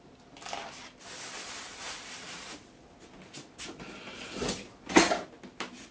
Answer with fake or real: real